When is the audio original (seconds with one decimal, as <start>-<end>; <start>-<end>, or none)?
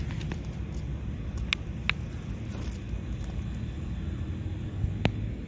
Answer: 0.0-5.5